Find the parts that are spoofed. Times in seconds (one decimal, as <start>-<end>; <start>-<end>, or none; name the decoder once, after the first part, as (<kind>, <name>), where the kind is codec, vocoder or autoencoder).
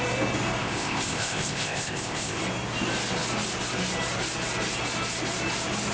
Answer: 0.6-2.4 (codec, ZipCodec)